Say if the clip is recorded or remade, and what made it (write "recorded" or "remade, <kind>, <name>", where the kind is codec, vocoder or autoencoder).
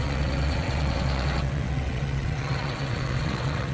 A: remade, vocoder, WaveNeXt